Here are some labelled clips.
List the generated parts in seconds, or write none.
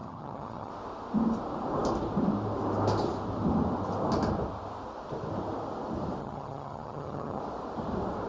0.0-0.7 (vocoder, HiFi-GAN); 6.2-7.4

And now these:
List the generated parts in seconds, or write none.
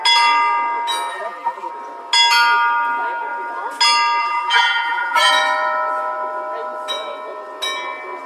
1.1-1.7 (vocoder, BigVGAN v2); 4.2-5.3